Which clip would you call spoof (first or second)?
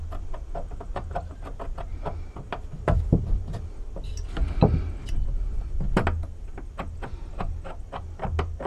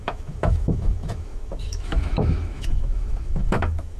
second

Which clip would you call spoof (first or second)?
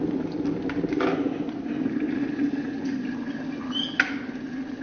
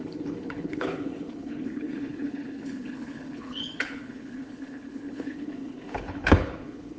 second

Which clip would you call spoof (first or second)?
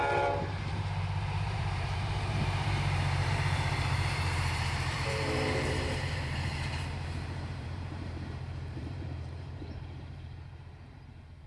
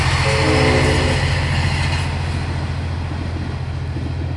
first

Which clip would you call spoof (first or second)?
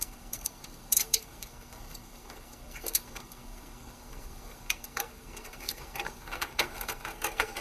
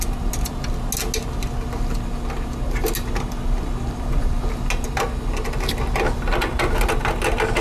first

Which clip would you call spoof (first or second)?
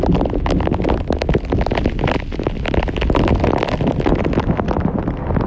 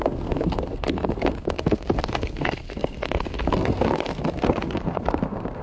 second